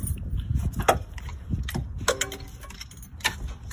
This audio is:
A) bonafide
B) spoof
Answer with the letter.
A